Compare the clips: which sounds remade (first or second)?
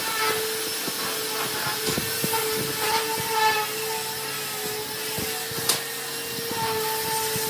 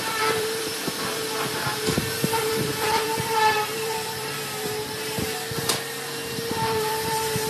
second